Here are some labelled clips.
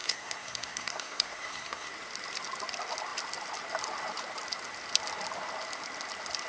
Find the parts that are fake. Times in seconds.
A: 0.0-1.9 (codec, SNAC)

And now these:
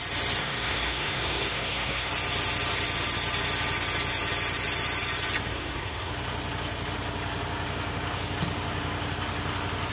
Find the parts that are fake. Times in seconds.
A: 0.4-2.1 (codec, SNAC); 5.5-6.1